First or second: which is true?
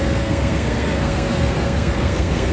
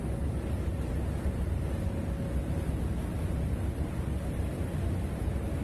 second